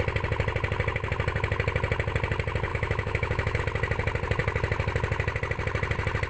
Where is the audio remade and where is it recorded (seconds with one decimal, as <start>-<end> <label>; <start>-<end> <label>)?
0.0-2.7 recorded; 2.7-3.6 remade; 3.6-6.3 recorded